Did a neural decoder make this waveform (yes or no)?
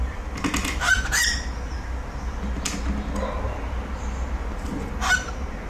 no